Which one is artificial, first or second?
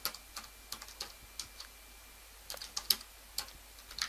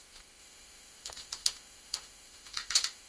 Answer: second